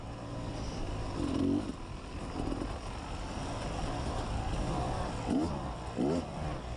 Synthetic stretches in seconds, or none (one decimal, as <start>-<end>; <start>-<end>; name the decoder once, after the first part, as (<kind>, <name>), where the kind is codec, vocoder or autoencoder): none